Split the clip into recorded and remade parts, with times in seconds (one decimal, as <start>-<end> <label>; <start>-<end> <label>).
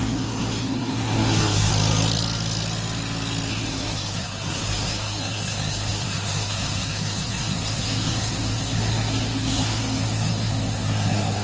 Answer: 0.0-1.7 remade; 1.7-3.5 recorded; 3.5-11.4 remade